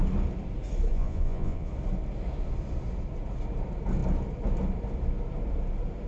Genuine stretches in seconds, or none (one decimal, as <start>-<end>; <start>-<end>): 0.0-0.9; 1.7-6.1